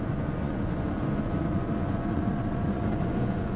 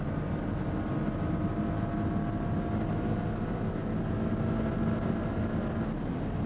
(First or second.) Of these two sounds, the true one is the second